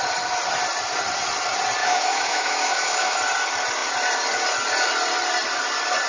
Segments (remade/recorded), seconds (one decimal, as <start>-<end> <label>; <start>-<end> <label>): 0.0-1.8 recorded; 1.8-3.2 remade; 3.2-6.1 recorded